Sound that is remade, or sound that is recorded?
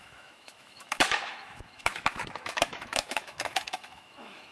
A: remade